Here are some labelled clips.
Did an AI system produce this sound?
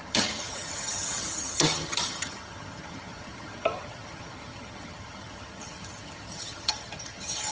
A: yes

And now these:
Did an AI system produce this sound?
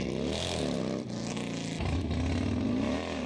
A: no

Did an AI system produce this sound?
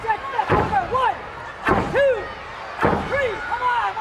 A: no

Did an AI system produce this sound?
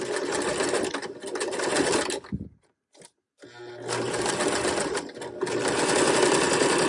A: no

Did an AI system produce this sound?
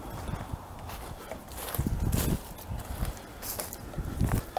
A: no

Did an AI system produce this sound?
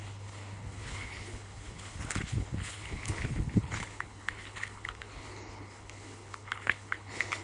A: yes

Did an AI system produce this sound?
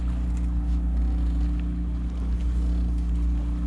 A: no